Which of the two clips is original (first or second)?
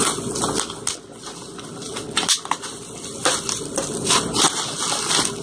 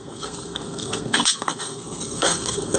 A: first